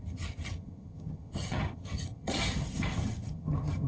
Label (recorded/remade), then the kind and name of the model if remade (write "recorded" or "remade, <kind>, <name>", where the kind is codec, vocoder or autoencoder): remade, vocoder, HiFi-GAN